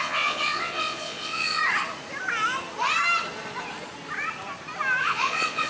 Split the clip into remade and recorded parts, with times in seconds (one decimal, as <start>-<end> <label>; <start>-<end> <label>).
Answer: 0.0-1.6 remade; 1.6-5.0 recorded; 5.0-5.7 remade